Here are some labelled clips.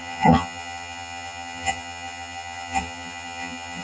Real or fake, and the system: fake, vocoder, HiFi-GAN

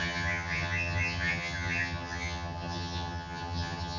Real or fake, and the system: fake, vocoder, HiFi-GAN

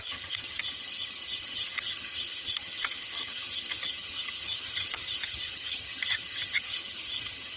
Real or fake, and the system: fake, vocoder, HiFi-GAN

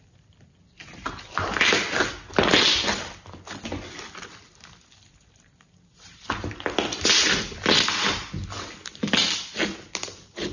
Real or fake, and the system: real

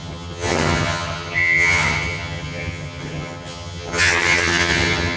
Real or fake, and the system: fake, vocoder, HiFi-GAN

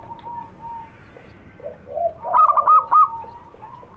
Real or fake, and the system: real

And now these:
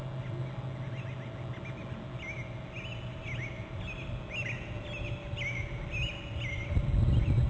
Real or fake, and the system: real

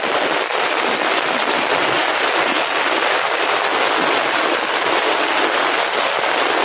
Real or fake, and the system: real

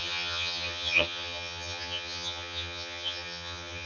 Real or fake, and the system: fake, vocoder, HiFi-GAN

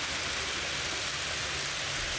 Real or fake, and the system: real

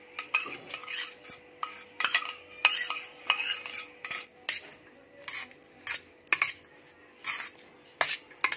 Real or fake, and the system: real